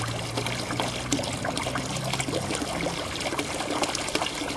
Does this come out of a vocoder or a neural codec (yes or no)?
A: no